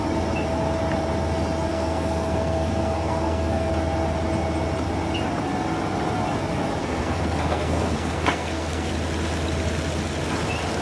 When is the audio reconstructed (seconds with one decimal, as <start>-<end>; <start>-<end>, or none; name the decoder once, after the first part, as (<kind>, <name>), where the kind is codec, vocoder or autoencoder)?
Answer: 1.7-3.7 (codec, SNAC); 6.8-8.9

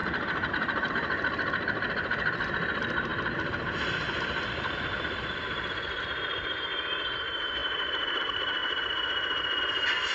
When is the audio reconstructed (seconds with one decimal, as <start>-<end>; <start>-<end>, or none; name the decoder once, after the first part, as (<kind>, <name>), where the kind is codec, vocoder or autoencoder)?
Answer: none

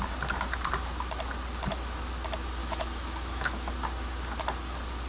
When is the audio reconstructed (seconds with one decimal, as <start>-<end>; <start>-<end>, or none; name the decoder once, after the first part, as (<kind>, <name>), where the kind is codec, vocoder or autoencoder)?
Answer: 2.6-3.7 (autoencoder, DAC-VAE)